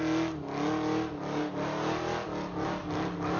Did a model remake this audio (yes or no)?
no